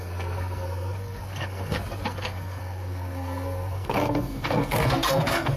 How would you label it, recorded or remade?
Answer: remade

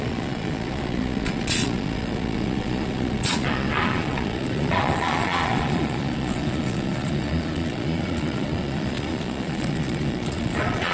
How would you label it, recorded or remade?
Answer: remade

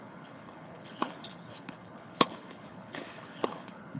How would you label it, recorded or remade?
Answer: remade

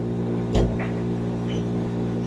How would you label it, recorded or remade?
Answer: remade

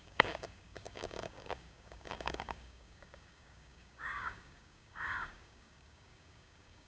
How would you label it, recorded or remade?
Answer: remade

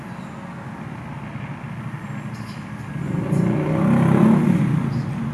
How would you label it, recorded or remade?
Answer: recorded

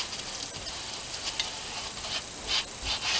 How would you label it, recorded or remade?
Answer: recorded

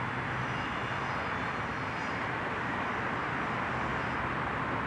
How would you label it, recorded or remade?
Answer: recorded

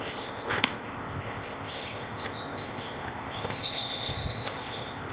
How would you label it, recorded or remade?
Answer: remade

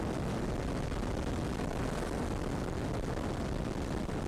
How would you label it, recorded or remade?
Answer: recorded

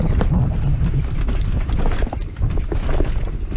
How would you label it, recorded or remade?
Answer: recorded